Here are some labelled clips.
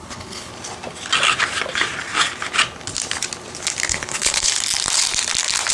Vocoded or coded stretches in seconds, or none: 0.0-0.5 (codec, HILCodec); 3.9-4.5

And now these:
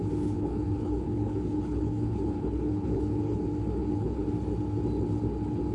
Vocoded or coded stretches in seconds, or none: 0.0-3.4 (codec, HILCodec); 3.8-4.3